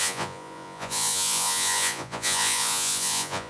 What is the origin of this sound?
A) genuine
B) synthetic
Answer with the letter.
B